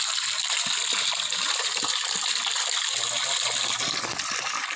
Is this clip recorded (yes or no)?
yes